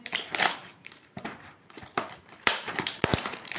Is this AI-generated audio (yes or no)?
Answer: yes